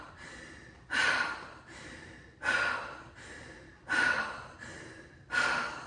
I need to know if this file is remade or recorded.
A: recorded